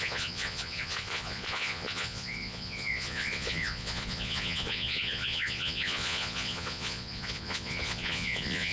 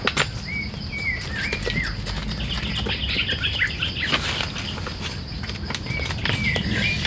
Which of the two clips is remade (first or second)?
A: first